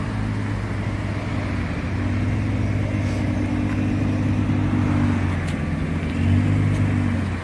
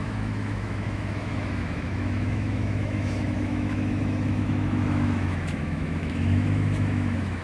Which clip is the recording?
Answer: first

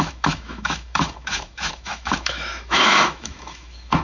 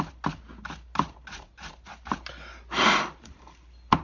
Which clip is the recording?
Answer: second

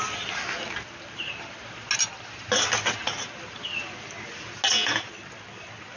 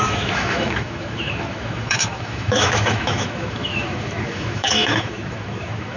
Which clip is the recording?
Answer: first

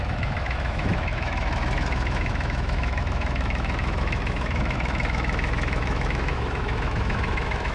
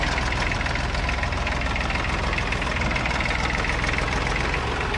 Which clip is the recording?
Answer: second